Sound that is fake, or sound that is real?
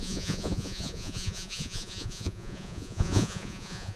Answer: fake